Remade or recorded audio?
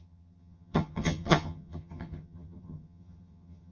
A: remade